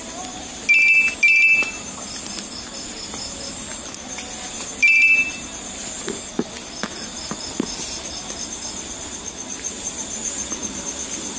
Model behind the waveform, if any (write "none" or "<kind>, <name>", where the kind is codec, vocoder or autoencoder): none